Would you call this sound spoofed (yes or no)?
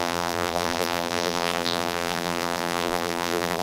yes